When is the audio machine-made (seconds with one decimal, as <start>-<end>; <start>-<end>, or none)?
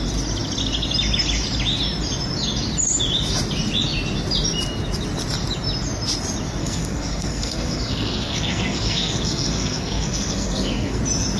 6.6-11.0